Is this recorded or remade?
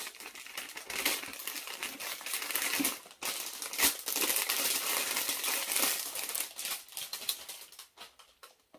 recorded